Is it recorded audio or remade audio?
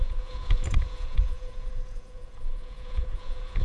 remade